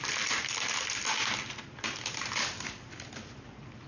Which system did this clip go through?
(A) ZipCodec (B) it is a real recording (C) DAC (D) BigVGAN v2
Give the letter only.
B